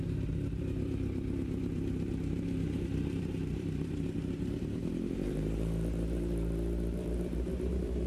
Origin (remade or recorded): remade